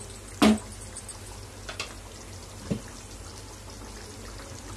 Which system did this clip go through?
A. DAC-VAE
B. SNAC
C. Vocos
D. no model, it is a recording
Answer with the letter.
D